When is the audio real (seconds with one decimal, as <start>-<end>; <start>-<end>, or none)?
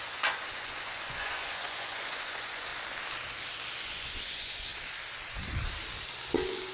2.7-3.8; 4.7-6.2